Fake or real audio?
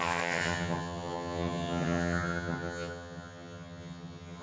fake